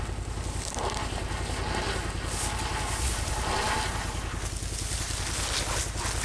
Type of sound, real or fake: real